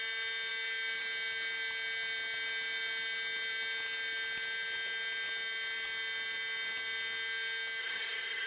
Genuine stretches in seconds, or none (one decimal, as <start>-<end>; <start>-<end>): 0.0-7.8